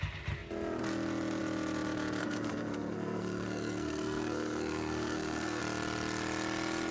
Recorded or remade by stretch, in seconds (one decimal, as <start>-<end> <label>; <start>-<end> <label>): 0.0-2.2 recorded; 2.2-5.6 remade; 5.6-6.9 recorded